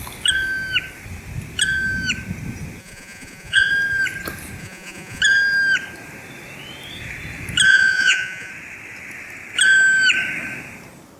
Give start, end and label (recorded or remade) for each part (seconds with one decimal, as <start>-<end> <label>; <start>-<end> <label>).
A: 0.0-2.8 recorded; 2.8-3.7 remade; 3.7-4.6 recorded; 4.6-5.2 remade; 5.2-7.7 recorded; 7.7-8.5 remade; 8.5-11.2 recorded